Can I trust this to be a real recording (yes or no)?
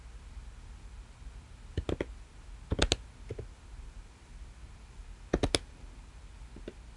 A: yes